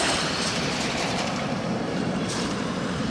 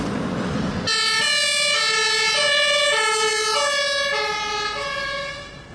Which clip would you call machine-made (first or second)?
first